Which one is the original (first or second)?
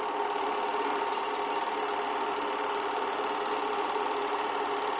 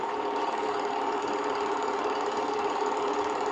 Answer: first